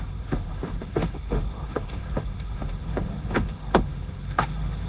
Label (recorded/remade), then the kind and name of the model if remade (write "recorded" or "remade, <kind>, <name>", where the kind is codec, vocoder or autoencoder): remade, autoencoder, DAC-VAE